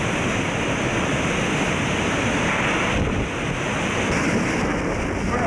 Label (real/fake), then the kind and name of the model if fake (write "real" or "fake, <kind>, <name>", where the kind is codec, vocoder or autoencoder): real